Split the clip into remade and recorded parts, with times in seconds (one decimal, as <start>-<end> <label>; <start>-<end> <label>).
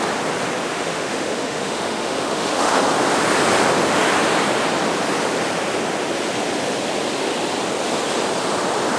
0.0-0.7 recorded; 0.7-2.8 remade; 2.8-9.0 recorded